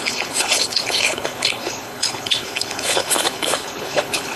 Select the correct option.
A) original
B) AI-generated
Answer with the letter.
B